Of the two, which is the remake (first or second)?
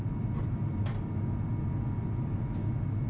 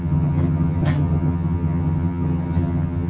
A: second